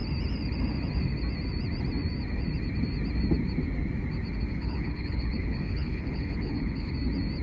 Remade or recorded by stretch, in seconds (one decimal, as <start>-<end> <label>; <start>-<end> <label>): 0.0-4.5 recorded; 4.5-6.9 remade; 6.9-7.4 recorded